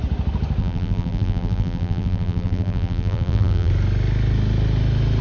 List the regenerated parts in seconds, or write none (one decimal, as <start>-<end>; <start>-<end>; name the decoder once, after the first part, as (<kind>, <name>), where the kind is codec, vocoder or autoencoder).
0.6-3.7 (vocoder, BigVGAN v2)